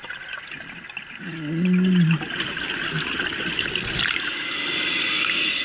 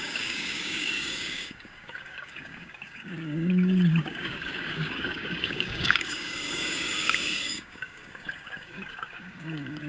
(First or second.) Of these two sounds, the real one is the first